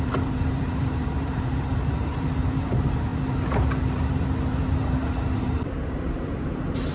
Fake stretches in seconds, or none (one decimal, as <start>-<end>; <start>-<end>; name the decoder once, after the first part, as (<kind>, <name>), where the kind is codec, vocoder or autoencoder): 0.0-3.1 (vocoder, BigVGAN v2); 3.8-6.9

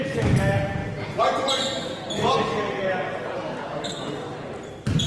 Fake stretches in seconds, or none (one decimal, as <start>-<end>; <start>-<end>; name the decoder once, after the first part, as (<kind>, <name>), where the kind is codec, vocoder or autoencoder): none

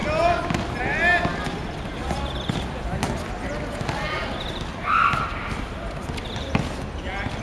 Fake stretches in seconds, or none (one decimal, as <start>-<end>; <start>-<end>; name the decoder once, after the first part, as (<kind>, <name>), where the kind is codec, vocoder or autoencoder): 4.7-5.7 (vocoder, BigVGAN v2)

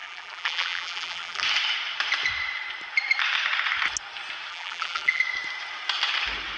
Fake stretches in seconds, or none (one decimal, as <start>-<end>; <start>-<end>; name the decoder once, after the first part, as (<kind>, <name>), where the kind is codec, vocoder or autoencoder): 0.0-1.4 (vocoder, BigVGAN v2); 4.5-5.2

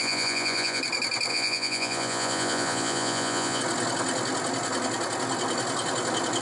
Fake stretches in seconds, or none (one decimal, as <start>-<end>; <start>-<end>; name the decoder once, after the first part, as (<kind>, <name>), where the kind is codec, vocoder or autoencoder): 0.0-0.8 (vocoder, Vocos); 1.3-3.6

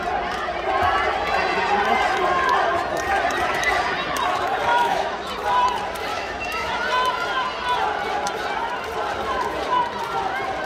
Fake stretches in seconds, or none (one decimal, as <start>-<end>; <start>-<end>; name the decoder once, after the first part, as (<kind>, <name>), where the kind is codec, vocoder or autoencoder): 4.7-5.3 (autoencoder, DAC-VAE); 6.1-6.7

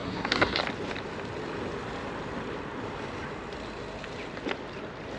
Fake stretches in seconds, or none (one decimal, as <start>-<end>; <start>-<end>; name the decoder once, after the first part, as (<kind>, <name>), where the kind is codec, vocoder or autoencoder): 0.0-0.6 (codec, SNAC)

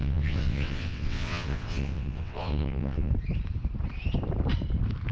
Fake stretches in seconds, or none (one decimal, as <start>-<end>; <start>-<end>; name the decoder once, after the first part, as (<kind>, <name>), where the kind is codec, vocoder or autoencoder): 0.0-3.1 (vocoder, WaveNeXt)